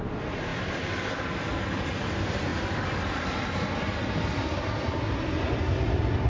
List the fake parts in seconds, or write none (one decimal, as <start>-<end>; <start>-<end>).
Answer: none